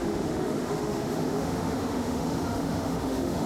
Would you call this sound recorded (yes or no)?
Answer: no